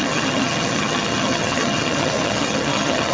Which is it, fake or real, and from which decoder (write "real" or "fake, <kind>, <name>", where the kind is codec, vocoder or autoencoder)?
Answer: fake, vocoder, HiFi-GAN